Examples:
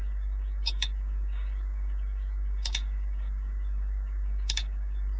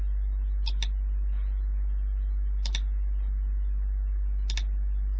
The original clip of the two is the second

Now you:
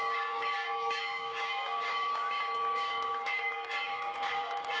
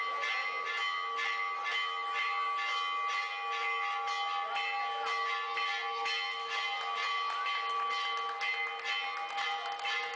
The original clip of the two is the second